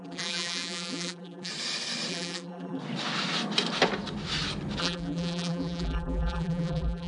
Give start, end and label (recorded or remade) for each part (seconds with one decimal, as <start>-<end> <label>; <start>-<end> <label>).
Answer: 0.0-1.5 remade; 1.5-2.1 recorded; 2.1-2.8 remade; 2.8-4.8 recorded; 4.8-7.1 remade